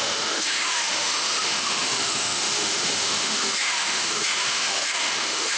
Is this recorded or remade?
remade